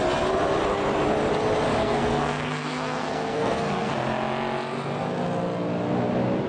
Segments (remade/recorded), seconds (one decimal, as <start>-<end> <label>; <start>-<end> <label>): 0.0-1.8 recorded; 1.8-3.9 remade; 3.9-6.5 recorded